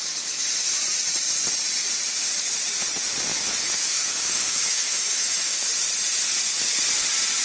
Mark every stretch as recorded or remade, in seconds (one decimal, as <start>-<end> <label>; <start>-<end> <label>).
0.0-3.3 recorded; 3.3-5.7 remade; 5.7-7.4 recorded